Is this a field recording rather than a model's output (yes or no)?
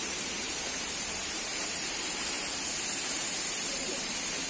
no